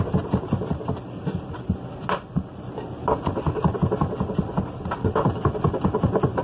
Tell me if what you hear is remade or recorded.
recorded